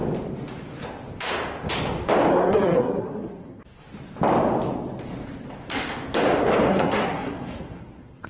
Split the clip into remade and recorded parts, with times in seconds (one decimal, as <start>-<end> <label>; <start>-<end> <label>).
0.0-2.3 recorded; 2.3-3.6 remade; 3.6-6.7 recorded; 6.7-8.3 remade